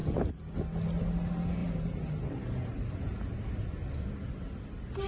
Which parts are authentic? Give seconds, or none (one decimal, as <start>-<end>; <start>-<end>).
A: 0.0-1.6; 2.9-5.1